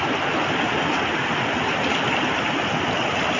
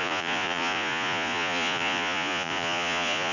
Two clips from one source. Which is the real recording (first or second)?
first